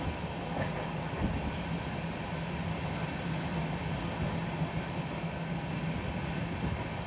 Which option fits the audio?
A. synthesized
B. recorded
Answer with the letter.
B